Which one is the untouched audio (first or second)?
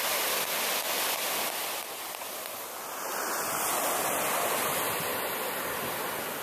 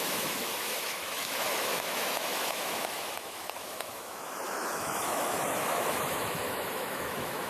first